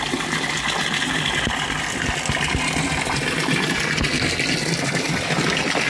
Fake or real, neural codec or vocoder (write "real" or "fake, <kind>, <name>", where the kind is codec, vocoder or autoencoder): real